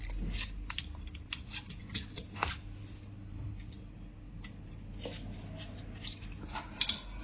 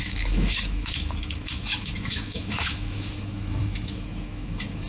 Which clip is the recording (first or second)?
first